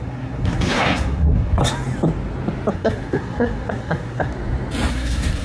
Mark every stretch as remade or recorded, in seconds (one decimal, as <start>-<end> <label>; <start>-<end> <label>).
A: 0.0-1.6 remade; 1.6-2.7 recorded; 2.7-4.3 remade; 4.3-4.9 recorded; 4.9-5.4 remade

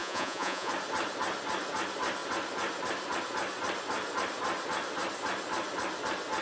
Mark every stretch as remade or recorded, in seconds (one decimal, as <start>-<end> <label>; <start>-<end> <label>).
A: 0.0-0.7 remade; 0.7-6.4 recorded